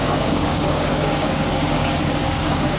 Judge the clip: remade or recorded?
remade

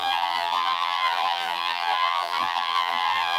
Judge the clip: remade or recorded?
remade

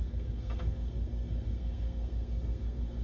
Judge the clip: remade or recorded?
remade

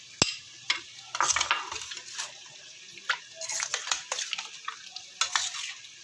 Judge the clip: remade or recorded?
recorded